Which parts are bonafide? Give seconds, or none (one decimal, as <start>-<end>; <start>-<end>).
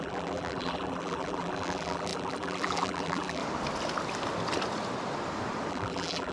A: 3.4-5.7